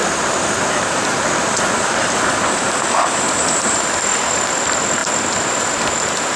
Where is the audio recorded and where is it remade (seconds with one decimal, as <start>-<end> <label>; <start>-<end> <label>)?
0.0-3.8 remade; 3.8-6.4 recorded